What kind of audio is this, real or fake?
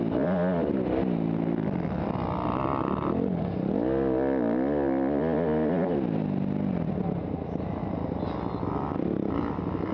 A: real